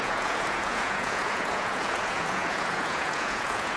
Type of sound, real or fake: fake